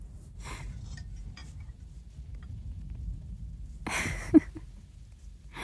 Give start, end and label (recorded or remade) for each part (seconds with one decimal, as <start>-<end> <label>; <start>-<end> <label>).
0.0-5.6 recorded